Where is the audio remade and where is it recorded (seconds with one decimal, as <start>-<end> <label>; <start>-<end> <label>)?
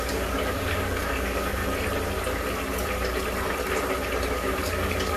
0.0-1.6 remade; 1.6-4.3 recorded; 4.3-5.2 remade